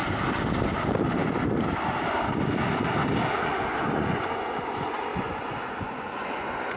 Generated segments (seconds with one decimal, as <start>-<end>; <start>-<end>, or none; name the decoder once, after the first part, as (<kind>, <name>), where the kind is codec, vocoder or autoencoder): 3.3-6.8 (vocoder, Vocos)